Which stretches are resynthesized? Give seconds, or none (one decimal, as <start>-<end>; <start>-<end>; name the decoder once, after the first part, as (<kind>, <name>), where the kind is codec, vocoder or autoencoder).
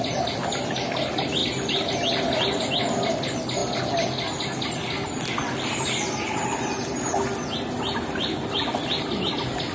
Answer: none